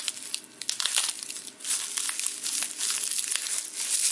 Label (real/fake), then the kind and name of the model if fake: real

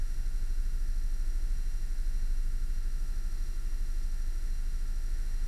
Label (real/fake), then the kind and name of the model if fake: fake, autoencoder, DAC-VAE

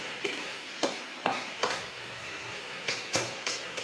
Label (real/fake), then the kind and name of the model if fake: fake, codec, SNAC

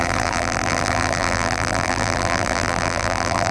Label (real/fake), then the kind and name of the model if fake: fake, vocoder, BigVGAN v2